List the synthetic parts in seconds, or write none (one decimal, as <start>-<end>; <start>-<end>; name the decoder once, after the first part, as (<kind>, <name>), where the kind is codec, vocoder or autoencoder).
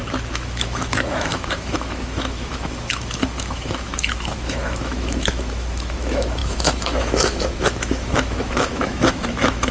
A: 0.0-9.7 (autoencoder, DAC-VAE)